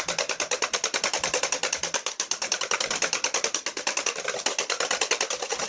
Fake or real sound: real